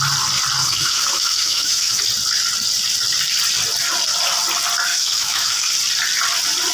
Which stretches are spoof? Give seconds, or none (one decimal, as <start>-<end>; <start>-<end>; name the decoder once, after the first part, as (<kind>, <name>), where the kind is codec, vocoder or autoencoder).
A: 0.6-2.0 (autoencoder, DAC-VAE); 4.9-5.7